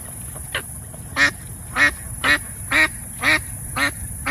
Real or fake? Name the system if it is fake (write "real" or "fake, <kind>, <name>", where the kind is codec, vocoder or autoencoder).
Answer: real